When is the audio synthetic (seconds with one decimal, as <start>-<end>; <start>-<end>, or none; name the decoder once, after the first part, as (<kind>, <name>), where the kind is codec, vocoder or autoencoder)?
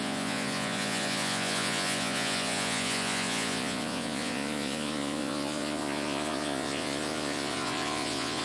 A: 0.0-8.4 (vocoder, Vocos)